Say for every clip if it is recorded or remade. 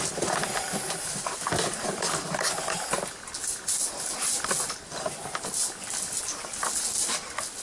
recorded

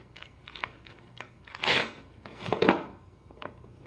remade